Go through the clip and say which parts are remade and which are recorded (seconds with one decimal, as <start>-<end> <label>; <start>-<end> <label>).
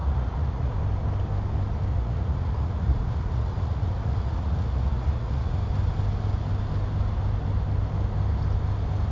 0.0-0.7 remade; 0.7-1.9 recorded; 1.9-5.6 remade; 5.6-9.1 recorded